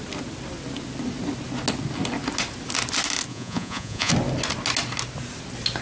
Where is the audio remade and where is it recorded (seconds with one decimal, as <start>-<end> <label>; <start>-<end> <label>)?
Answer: 0.0-3.3 recorded; 3.3-4.1 remade; 4.1-5.8 recorded